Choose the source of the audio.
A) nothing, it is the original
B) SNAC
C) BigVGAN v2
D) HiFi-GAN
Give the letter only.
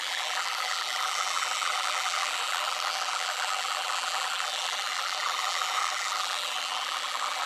C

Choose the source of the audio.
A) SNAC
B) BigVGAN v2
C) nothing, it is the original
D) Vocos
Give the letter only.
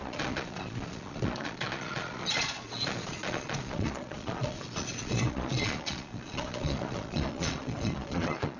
D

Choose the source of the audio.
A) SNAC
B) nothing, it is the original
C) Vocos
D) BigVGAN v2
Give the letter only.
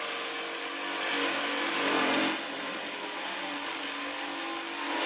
B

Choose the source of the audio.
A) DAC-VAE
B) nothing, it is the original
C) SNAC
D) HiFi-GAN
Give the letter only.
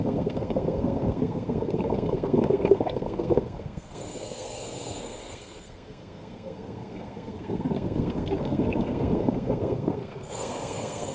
C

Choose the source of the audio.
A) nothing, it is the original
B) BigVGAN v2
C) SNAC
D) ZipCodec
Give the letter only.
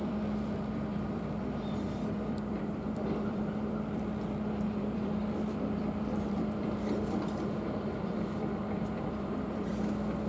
B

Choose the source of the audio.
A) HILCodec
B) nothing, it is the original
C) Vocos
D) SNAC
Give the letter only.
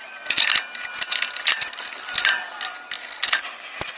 B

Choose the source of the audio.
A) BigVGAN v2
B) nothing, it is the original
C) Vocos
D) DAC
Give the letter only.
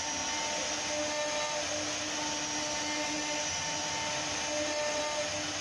B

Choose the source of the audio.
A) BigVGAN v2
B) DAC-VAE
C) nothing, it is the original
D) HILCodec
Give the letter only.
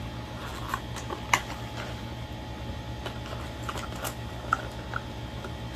C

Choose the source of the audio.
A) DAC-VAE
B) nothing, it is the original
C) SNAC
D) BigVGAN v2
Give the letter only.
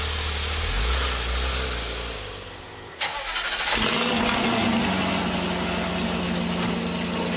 B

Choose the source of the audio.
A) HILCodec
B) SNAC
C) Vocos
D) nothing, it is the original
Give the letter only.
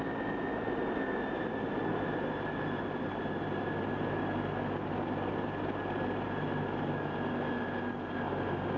D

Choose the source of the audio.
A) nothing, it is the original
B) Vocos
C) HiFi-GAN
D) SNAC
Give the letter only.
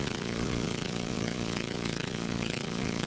B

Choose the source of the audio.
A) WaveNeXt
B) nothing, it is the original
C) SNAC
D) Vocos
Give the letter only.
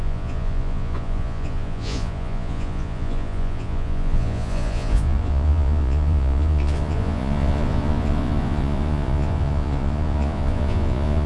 D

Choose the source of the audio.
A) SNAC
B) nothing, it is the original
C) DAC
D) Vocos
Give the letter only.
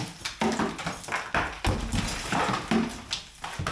B